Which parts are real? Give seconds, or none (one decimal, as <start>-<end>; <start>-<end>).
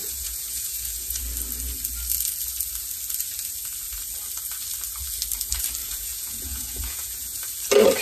1.2-5.8; 7.5-8.0